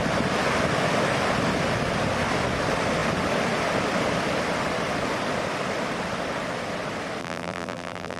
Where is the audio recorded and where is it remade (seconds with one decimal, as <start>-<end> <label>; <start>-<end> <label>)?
0.0-7.2 recorded; 7.2-8.2 remade